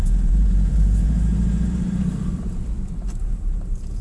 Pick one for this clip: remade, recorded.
remade